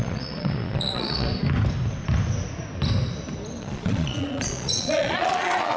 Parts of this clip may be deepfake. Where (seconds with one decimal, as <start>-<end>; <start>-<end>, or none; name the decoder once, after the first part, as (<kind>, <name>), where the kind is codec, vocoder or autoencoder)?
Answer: 0.0-1.3 (vocoder, Vocos); 3.6-5.8